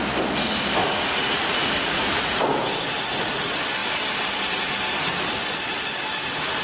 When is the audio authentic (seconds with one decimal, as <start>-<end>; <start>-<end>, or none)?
0.0-0.8; 2.4-6.6